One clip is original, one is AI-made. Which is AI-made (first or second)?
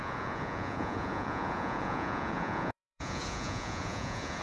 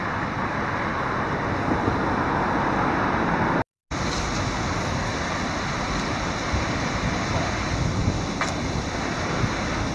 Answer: first